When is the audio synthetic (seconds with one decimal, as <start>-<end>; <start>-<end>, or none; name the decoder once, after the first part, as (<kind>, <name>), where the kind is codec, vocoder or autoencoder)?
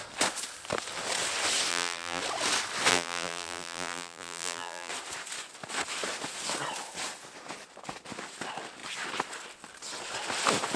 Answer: 1.7-2.2 (vocoder, BigVGAN v2); 2.9-4.9